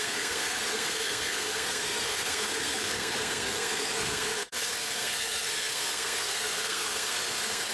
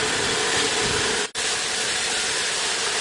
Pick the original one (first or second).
second